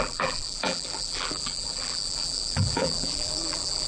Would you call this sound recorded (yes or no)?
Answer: no